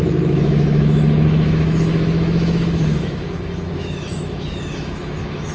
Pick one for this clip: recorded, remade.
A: remade